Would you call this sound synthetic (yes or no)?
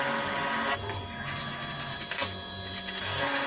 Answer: no